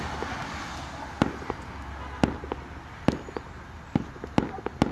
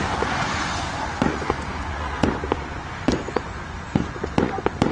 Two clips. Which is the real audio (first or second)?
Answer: first